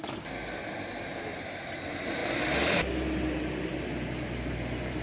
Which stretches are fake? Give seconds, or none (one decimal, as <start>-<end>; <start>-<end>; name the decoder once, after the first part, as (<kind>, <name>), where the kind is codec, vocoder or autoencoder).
none